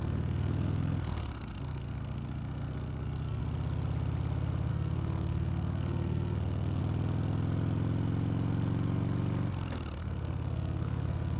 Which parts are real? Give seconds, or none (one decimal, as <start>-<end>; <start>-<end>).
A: 3.4-4.7; 6.8-10.0

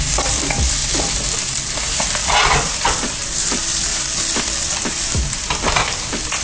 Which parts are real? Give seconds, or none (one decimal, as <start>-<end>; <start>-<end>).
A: 3.9-4.9

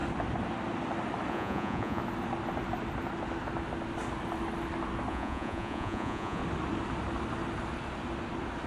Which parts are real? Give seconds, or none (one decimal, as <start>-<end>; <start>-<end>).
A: 0.0-1.3; 2.0-5.1; 6.4-8.7

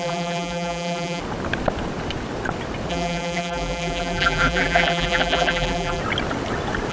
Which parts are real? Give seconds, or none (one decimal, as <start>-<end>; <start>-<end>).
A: 1.2-2.9; 6.0-6.9

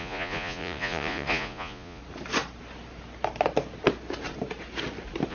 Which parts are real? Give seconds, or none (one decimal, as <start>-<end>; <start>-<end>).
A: 2.0-5.3